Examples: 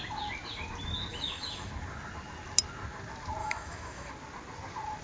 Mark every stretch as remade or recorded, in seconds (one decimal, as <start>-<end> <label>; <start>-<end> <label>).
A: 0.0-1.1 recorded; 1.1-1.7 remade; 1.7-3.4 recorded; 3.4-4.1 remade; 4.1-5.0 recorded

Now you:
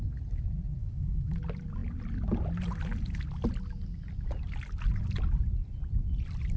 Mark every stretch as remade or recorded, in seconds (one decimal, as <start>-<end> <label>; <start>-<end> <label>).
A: 0.0-0.8 recorded; 0.8-1.4 remade; 1.4-6.6 recorded

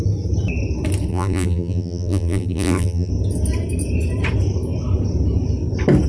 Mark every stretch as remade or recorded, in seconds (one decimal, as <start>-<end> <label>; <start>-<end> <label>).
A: 0.0-1.1 recorded; 1.1-3.1 remade; 3.1-6.1 recorded

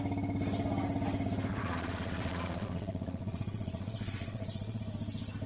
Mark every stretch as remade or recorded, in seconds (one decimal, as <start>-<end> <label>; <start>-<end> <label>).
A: 0.0-1.5 recorded; 1.5-4.8 remade; 4.8-5.5 recorded

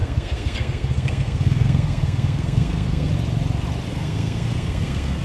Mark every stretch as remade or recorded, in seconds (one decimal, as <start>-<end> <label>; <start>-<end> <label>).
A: 0.0-3.1 remade; 3.1-3.9 recorded; 3.9-5.2 remade

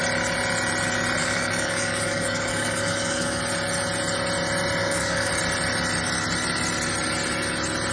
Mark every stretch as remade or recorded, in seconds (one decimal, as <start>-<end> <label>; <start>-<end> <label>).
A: 0.0-1.2 recorded; 1.2-3.4 remade; 3.4-4.8 recorded; 4.8-5.3 remade; 5.3-7.9 recorded

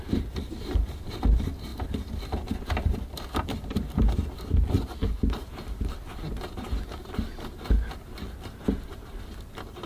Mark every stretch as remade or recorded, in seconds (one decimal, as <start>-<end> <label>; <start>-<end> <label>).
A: 0.0-9.9 recorded